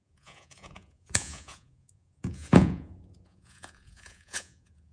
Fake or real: fake